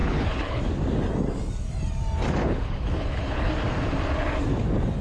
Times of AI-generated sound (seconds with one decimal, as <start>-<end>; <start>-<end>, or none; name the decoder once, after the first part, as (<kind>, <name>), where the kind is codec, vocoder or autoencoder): 0.0-0.6 (codec, HILCodec); 2.4-3.5